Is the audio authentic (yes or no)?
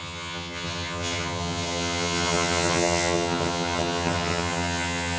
no